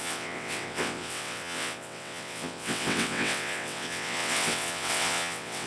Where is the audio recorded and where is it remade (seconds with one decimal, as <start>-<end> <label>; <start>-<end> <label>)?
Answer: 0.0-5.7 remade